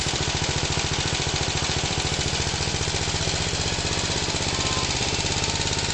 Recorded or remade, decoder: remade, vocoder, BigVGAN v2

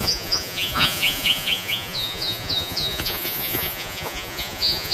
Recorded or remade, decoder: remade, vocoder, Vocos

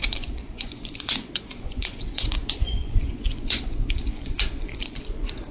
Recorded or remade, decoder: remade, vocoder, Vocos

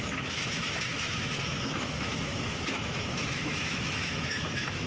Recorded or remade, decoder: remade, autoencoder, DAC-VAE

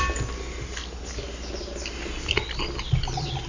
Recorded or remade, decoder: recorded